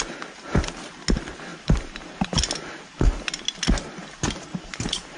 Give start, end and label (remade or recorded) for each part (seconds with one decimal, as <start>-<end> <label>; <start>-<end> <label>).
0.0-1.5 recorded; 1.5-2.4 remade; 2.4-5.2 recorded